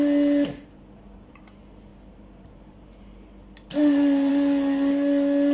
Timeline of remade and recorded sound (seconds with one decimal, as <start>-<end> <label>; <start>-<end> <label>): 0.0-1.9 recorded; 1.9-4.3 remade; 4.3-5.5 recorded